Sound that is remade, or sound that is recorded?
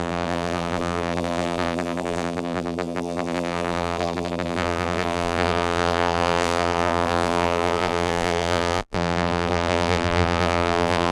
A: remade